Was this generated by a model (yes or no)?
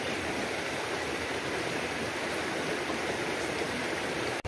no